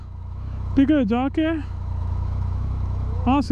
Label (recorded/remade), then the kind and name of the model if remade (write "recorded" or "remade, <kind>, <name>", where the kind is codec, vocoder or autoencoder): remade, autoencoder, DAC-VAE